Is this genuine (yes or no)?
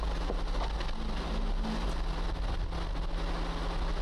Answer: yes